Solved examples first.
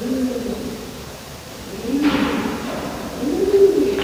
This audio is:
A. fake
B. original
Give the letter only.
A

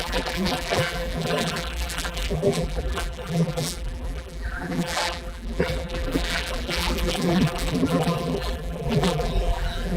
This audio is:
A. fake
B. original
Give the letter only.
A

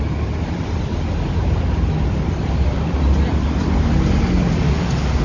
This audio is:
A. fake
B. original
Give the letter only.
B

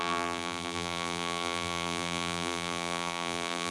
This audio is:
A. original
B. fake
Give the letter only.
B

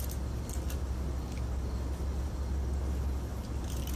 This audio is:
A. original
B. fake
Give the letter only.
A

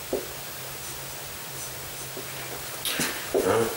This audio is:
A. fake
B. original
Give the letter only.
B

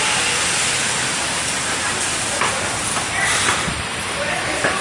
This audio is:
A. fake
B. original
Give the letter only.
B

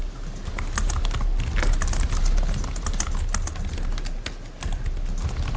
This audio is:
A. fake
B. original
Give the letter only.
B